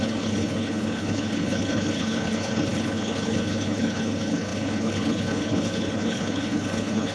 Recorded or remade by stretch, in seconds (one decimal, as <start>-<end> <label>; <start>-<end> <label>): 0.0-7.1 remade